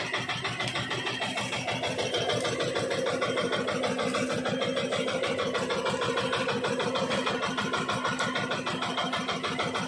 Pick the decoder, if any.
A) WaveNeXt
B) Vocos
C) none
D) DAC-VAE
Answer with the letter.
C